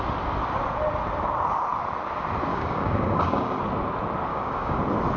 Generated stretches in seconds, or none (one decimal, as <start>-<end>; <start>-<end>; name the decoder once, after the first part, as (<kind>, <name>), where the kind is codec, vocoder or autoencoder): 2.5-3.6 (codec, DAC); 4.3-4.8